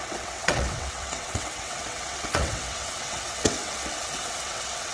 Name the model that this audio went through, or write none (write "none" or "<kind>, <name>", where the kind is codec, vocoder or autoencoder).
vocoder, WaveNeXt